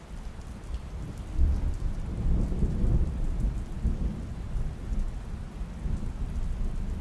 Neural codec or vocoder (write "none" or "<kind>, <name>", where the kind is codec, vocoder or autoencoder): none